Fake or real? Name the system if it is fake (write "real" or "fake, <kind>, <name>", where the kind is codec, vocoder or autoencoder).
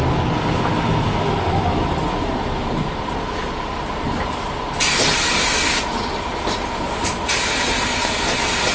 real